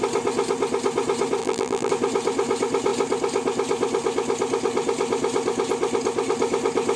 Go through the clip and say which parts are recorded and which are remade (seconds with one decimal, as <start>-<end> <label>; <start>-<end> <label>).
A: 0.0-1.4 recorded; 1.4-1.9 remade; 1.9-7.0 recorded